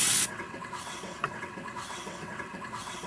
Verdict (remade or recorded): remade